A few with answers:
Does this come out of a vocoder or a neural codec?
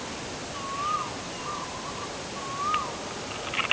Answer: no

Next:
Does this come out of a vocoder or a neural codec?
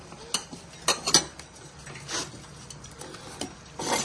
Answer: no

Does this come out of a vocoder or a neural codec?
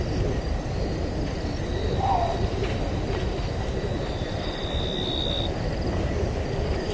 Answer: no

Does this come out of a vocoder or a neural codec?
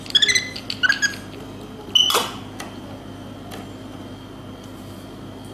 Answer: no